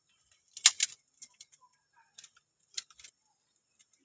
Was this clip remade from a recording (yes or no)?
no